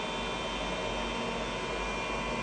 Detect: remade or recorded recorded